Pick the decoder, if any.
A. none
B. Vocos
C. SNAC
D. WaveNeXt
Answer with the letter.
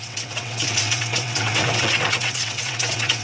D